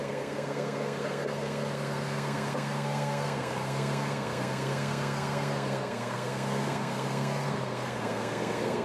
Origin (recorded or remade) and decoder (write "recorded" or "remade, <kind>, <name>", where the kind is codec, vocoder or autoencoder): remade, codec, SNAC